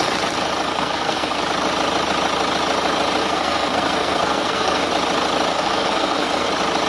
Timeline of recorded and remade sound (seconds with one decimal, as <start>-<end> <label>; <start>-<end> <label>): 0.0-0.7 recorded; 0.7-1.4 remade; 1.4-3.2 recorded; 3.2-4.9 remade; 4.9-5.5 recorded; 5.5-6.5 remade; 6.5-6.9 recorded